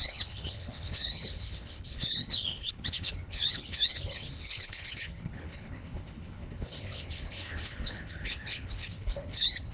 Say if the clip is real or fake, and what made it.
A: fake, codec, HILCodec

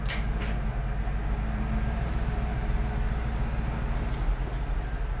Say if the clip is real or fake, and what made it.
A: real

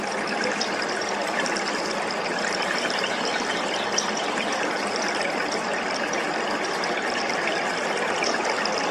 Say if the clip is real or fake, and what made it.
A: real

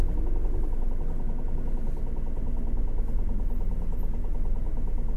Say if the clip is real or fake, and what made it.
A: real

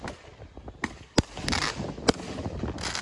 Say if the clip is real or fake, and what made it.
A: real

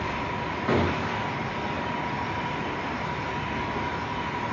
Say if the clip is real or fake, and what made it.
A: real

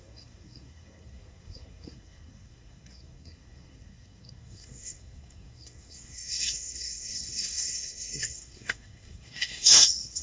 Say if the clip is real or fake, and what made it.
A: fake, codec, SNAC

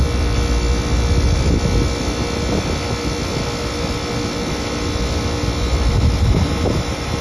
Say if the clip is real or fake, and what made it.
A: real